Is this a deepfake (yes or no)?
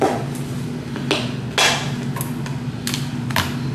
no